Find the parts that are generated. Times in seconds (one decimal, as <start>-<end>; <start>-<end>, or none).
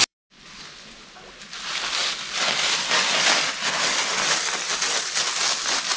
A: none